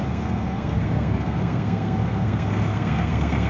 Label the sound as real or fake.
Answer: fake